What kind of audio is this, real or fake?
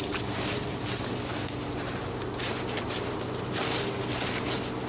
real